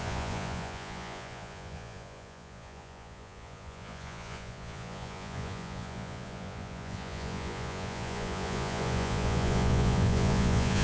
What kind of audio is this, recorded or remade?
remade